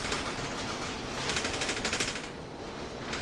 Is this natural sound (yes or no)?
yes